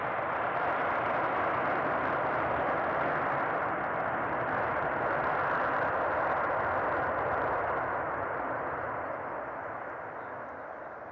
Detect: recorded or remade recorded